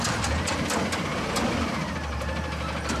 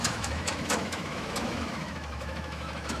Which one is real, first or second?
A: first